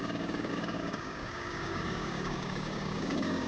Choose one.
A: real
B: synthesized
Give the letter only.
B